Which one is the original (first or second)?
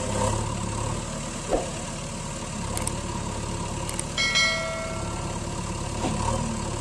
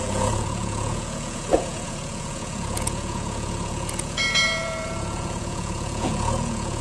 first